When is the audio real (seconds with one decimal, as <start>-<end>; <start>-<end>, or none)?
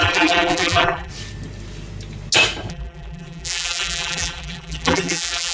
1.1-2.7